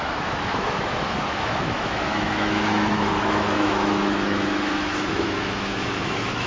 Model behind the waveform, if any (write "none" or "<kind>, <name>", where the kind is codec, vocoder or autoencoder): autoencoder, DAC-VAE